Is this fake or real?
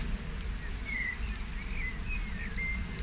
real